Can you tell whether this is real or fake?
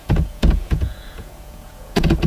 fake